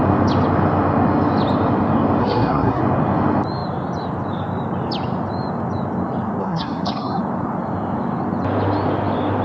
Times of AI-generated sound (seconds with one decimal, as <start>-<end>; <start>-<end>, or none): 2.2-2.8; 6.4-7.2